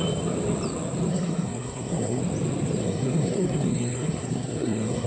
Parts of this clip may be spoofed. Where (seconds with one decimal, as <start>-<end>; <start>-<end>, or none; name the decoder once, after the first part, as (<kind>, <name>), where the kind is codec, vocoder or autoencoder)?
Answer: 1.1-2.2 (codec, SNAC); 2.8-5.1